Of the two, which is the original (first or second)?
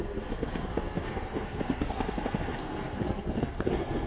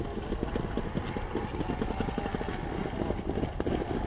second